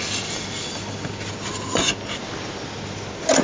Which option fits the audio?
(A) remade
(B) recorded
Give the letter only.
B